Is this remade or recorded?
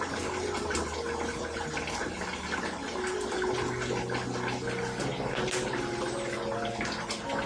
recorded